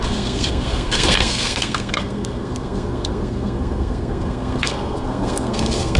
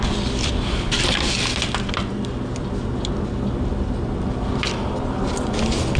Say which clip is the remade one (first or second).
first